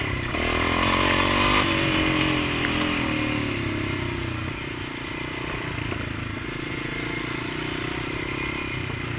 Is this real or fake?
real